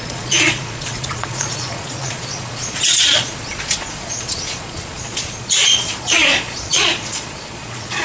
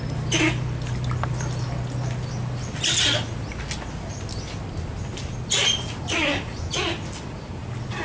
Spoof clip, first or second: first